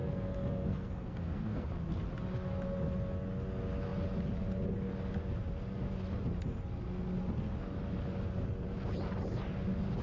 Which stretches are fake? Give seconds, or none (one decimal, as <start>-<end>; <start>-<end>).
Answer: 0.0-1.7